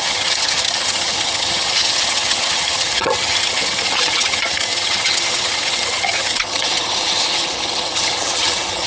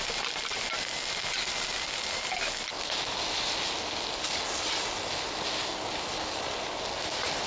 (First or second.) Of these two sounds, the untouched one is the second